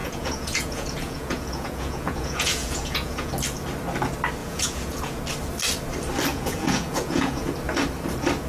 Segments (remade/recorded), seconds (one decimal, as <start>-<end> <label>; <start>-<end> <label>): 0.0-3.3 remade; 3.3-4.4 recorded; 4.4-5.2 remade; 5.2-6.3 recorded; 6.3-7.4 remade; 7.4-8.5 recorded